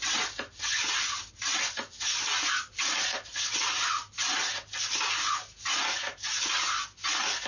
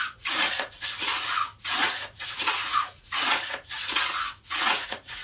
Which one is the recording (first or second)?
first